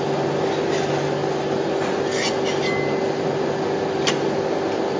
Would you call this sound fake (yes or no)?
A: no